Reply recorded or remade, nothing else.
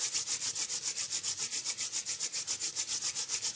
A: recorded